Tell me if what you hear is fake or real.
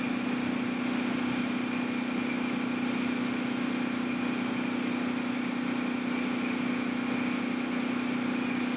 real